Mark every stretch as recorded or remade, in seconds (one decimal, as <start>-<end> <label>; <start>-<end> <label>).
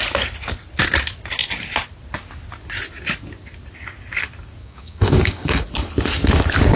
0.0-4.6 recorded; 4.6-5.6 remade; 5.6-6.8 recorded